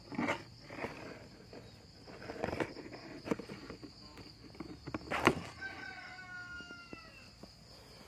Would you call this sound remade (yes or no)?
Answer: no